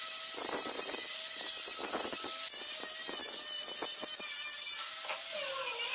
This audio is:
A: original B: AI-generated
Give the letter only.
A